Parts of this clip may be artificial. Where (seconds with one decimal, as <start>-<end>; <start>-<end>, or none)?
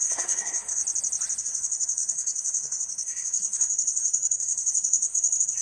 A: 0.0-0.8; 1.4-5.6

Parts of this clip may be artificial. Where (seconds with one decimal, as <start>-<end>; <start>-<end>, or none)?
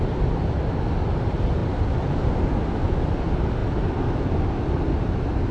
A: none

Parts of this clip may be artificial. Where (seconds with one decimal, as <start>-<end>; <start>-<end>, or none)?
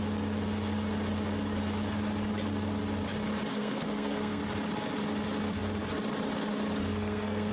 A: 3.5-4.4; 6.8-7.5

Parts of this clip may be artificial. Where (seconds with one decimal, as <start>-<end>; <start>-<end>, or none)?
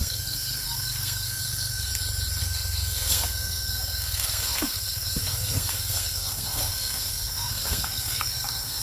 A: 0.0-1.9; 2.4-8.8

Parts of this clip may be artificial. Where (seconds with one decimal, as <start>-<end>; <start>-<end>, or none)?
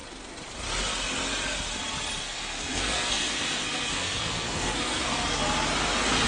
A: 2.2-5.4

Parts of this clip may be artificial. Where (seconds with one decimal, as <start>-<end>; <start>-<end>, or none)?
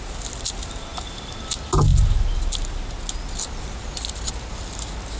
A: none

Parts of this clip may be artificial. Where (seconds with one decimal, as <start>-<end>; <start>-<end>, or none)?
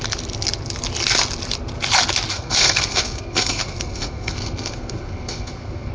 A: 2.3-5.9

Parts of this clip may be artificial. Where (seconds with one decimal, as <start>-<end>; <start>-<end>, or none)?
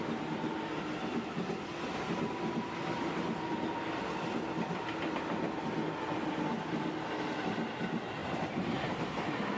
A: none